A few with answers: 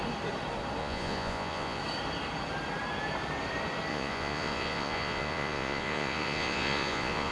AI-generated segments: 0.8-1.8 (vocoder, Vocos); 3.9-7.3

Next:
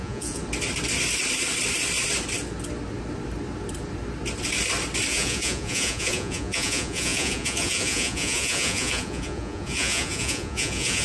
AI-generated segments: 0.0-0.4 (vocoder, Vocos); 5.1-11.0

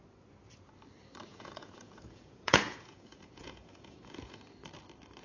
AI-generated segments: 1.3-4.4 (vocoder, Vocos)